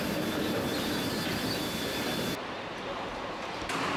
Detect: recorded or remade recorded